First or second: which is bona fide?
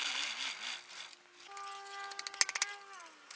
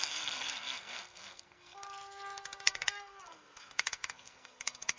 first